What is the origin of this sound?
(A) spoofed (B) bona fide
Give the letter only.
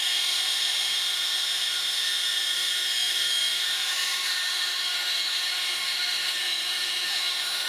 A